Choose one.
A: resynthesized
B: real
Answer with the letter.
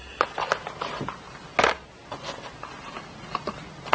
B